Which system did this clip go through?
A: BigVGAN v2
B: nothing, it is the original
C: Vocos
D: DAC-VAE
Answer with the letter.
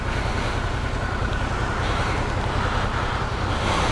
B